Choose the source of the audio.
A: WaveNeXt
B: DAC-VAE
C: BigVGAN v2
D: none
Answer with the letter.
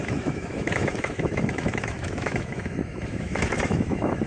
B